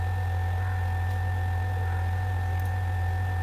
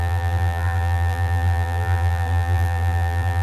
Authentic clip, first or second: first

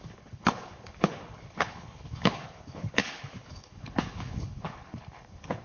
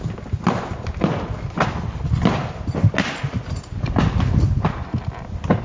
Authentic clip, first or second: second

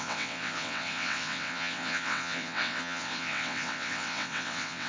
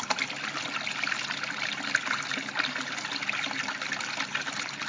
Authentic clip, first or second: second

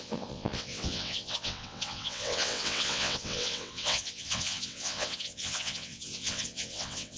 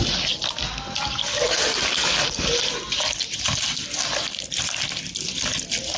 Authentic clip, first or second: second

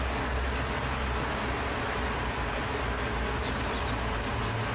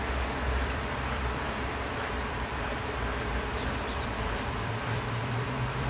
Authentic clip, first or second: first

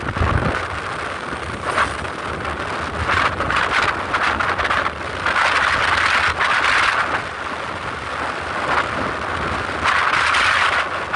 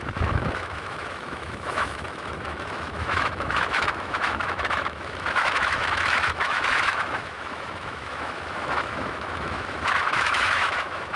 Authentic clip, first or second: first